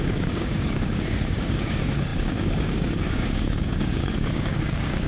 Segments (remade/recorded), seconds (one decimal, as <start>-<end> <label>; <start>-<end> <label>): 0.0-5.1 remade